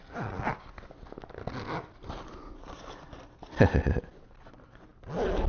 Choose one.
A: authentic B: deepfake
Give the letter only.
A